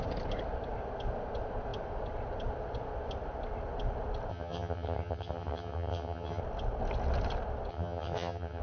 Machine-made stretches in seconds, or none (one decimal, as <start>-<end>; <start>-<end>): 4.3-6.4; 7.7-8.6